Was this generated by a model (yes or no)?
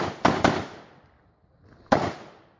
no